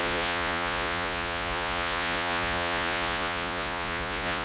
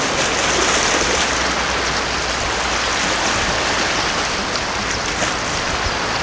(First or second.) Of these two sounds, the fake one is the first